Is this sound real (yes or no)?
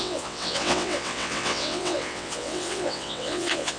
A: no